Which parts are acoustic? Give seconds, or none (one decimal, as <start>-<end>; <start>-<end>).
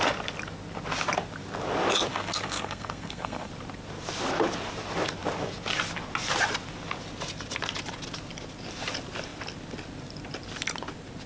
0.0-2.1; 3.5-11.3